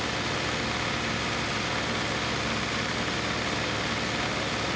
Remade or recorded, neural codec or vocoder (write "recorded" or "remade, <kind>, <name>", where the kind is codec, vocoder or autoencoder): recorded